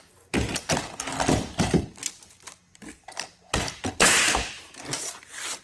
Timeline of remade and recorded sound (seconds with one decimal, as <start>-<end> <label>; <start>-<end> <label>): 0.0-5.6 recorded